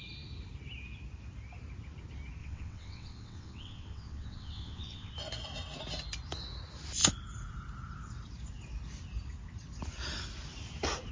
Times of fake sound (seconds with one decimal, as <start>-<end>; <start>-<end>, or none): 2.4-5.1